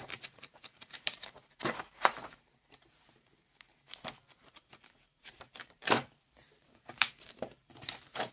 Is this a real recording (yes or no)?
no